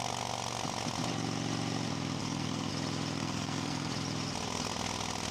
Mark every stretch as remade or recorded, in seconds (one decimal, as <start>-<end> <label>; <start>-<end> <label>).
0.0-2.2 recorded; 2.2-2.7 remade; 2.7-3.2 recorded; 3.2-3.9 remade; 3.9-5.3 recorded